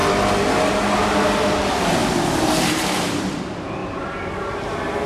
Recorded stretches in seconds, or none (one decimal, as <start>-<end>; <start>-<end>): 0.0-2.0; 3.4-3.8; 4.5-5.1